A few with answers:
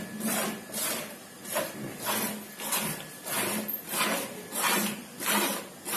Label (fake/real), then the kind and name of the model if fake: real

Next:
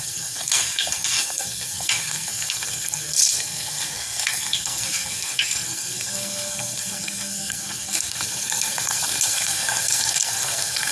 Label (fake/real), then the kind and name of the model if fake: fake, codec, SNAC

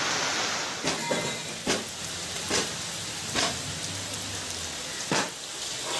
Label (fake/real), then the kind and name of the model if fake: real